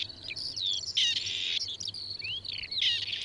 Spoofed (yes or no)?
no